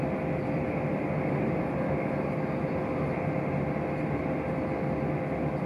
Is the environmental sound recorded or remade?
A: recorded